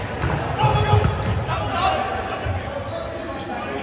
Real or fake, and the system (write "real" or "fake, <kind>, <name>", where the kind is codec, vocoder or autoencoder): real